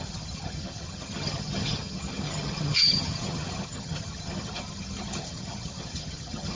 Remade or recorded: remade